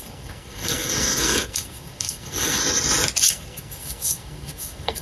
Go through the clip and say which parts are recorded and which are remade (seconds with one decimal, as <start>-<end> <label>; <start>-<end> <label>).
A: 0.0-2.6 remade; 2.6-3.3 recorded; 3.3-5.0 remade

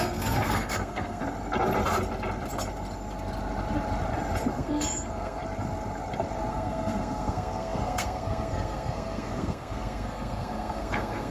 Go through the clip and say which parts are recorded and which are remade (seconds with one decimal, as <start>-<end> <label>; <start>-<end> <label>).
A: 0.0-1.2 remade; 1.2-4.5 recorded; 4.5-5.4 remade; 5.4-6.5 recorded; 6.5-11.3 remade

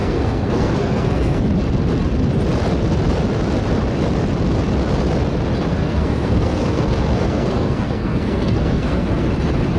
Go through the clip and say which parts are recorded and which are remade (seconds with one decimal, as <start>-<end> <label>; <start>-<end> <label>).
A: 0.0-1.4 remade; 1.4-5.7 recorded; 5.7-9.3 remade; 9.3-9.8 recorded

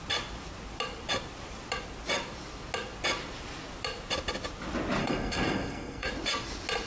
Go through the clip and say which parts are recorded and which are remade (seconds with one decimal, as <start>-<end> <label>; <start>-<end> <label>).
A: 0.0-5.0 recorded; 5.0-6.1 remade; 6.1-6.9 recorded

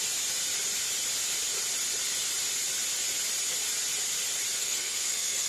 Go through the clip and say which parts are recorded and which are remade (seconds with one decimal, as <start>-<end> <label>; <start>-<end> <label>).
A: 0.0-4.6 recorded; 4.6-5.5 remade

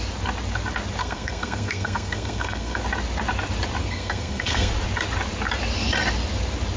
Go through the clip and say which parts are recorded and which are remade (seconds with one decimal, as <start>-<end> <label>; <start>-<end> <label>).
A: 0.0-1.0 recorded; 1.0-2.8 remade; 2.8-3.8 recorded; 3.8-4.7 remade; 4.7-6.8 recorded

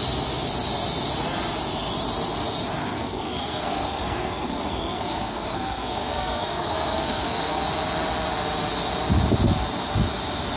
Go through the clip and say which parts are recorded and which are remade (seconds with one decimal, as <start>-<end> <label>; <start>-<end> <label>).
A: 0.0-2.8 recorded; 2.8-7.6 remade; 7.6-10.6 recorded